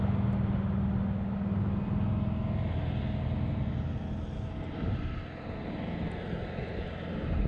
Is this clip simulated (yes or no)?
no